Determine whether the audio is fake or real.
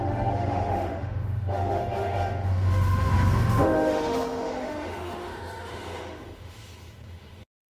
fake